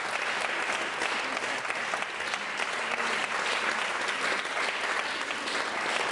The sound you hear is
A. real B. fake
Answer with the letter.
A